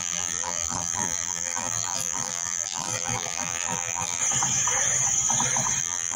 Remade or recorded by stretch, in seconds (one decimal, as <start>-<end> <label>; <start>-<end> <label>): 0.0-4.2 remade; 4.2-5.8 recorded; 5.8-6.2 remade